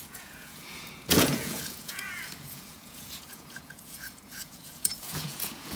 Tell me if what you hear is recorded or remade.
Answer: remade